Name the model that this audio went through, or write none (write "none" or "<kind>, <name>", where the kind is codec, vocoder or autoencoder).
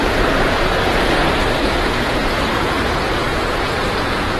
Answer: vocoder, Vocos